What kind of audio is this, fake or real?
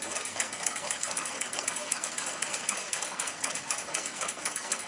fake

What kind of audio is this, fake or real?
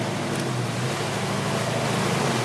real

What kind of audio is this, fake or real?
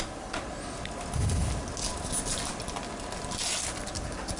real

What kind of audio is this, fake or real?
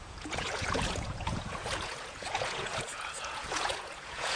fake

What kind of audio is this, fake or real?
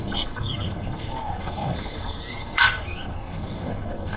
fake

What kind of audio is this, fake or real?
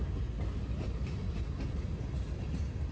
real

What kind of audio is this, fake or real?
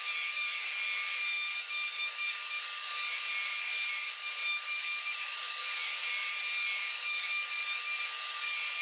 fake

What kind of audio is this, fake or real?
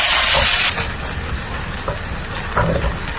real